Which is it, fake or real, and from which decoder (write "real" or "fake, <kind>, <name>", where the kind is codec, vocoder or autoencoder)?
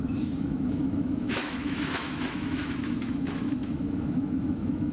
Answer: fake, autoencoder, DAC-VAE